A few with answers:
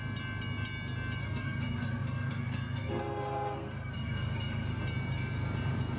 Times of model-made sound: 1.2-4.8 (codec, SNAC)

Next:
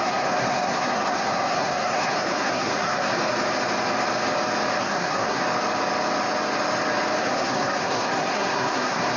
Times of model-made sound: 0.0-3.2 (codec, SNAC); 4.8-5.4; 7.2-9.2

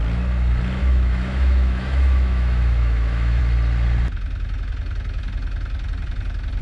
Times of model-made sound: 0.8-3.4 (autoencoder, DAC-VAE)

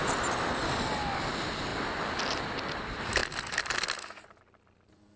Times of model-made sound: none